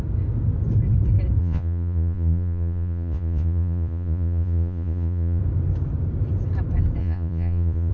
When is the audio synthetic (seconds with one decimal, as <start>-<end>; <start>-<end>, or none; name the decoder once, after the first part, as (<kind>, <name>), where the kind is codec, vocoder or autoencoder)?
1.4-5.4 (vocoder, Vocos); 7.0-7.9